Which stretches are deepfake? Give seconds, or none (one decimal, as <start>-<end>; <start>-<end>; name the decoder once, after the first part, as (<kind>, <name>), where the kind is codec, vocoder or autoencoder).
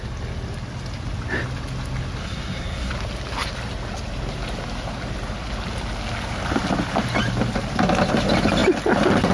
2.2-2.9 (codec, SNAC)